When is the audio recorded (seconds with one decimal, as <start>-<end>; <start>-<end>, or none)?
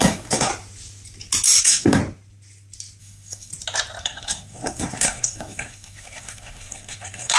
0.5-1.6; 2.0-3.0; 3.5-4.0